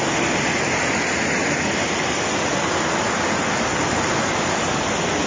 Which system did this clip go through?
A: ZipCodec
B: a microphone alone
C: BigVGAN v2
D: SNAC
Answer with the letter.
B